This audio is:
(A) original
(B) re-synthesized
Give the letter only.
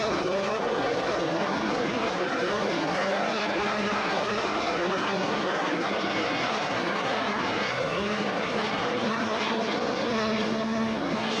B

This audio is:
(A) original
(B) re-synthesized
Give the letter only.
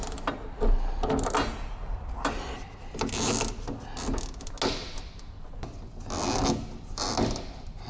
A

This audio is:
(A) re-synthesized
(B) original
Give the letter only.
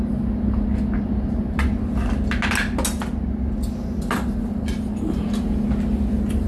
B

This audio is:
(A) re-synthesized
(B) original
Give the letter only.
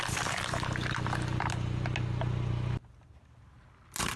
B